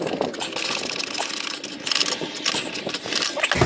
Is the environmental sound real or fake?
real